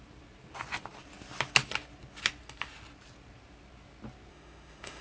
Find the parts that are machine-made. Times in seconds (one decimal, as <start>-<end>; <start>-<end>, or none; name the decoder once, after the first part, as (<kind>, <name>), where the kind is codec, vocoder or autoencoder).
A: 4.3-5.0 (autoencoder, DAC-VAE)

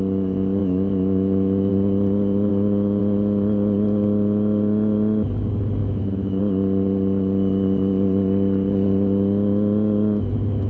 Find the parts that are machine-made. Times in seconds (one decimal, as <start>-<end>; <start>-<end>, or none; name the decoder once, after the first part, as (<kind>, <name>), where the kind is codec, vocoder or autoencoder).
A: 0.6-1.7 (autoencoder, DAC-VAE); 2.5-3.0; 5.8-6.4

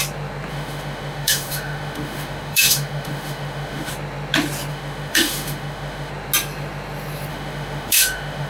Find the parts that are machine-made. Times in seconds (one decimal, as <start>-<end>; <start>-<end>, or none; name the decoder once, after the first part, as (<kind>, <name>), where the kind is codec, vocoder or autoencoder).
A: 0.5-3.9 (autoencoder, DAC-VAE); 4.7-6.1; 7.3-8.5

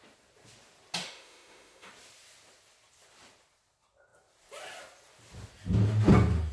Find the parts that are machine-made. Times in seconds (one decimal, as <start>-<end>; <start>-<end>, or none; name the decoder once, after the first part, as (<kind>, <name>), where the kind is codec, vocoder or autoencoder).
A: 1.0-1.9 (autoencoder, DAC-VAE)

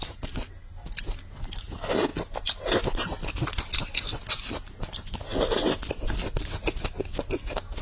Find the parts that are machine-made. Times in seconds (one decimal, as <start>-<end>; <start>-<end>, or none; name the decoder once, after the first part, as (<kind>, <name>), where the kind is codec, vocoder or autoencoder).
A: none

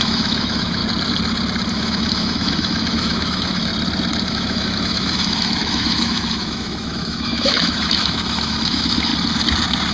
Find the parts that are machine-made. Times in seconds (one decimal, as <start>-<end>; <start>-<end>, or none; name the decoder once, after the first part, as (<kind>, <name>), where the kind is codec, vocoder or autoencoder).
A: 0.0-0.8 (autoencoder, DAC-VAE); 1.7-3.7; 4.3-9.1